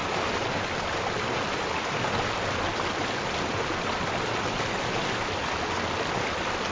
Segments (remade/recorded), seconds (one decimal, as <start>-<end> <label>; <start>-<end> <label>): 0.0-6.7 recorded